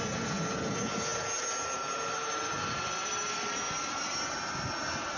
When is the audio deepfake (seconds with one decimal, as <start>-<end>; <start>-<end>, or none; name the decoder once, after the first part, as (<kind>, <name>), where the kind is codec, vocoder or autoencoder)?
none